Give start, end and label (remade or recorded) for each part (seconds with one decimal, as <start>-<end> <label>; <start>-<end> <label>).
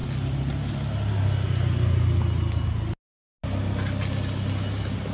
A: 0.0-5.1 recorded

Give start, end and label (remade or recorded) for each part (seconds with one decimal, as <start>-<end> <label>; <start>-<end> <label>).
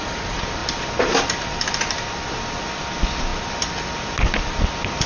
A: 0.0-0.6 recorded; 0.6-1.7 remade; 1.7-5.1 recorded